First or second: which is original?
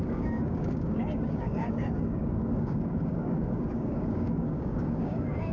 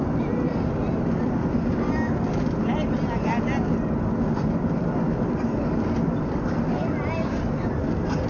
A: second